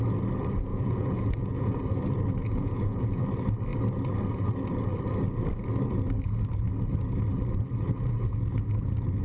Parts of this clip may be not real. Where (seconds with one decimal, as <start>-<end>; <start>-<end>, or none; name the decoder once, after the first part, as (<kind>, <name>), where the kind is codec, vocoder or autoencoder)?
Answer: 0.7-1.7 (vocoder, Vocos); 2.4-3.2

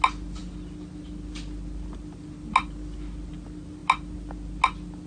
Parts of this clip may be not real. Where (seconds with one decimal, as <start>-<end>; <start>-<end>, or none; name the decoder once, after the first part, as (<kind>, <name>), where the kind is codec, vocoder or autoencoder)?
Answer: none

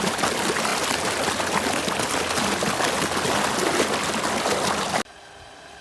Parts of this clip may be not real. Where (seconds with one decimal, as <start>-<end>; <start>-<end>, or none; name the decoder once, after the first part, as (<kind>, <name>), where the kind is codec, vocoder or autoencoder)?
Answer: none

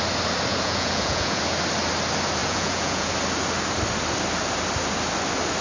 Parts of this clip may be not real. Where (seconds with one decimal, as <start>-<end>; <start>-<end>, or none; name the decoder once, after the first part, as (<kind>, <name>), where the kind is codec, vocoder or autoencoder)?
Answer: 0.5-1.4 (vocoder, Vocos); 2.4-3.1